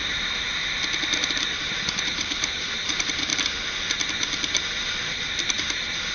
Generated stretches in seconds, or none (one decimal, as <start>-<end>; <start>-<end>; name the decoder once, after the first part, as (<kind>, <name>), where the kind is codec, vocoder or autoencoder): 0.0-3.3 (vocoder, BigVGAN v2); 4.6-6.1